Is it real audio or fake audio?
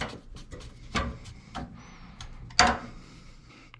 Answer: real